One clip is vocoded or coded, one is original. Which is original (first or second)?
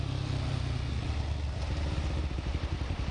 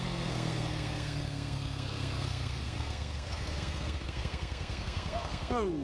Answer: first